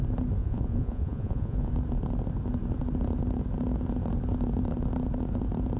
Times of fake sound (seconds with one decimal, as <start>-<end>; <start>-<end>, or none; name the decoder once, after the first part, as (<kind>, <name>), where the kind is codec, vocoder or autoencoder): 0.4-1.7 (vocoder, Vocos)